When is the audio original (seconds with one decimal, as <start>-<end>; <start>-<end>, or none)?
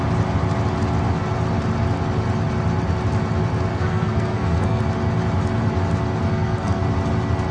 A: 0.0-3.7; 4.8-6.3; 6.8-7.5